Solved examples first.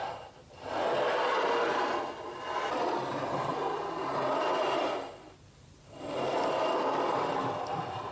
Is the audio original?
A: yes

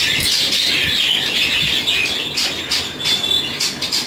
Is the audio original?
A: yes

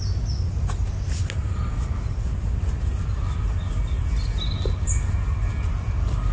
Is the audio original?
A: yes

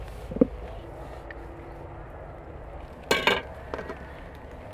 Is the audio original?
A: yes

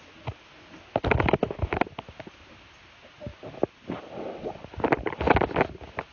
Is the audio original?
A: yes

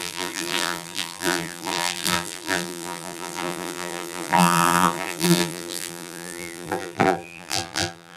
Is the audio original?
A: no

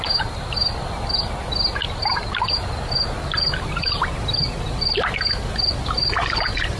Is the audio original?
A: yes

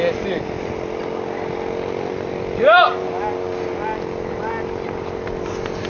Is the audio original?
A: yes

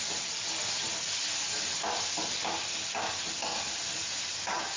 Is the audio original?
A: yes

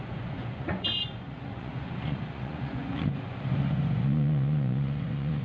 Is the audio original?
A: no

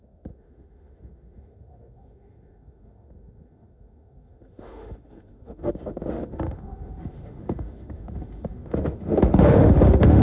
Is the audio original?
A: no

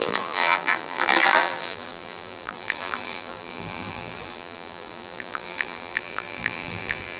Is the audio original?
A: no